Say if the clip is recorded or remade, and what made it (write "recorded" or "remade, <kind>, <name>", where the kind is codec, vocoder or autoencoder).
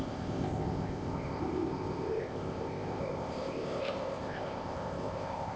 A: remade, codec, ZipCodec